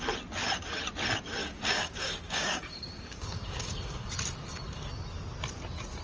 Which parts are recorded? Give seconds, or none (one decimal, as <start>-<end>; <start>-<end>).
0.0-1.4; 4.1-6.0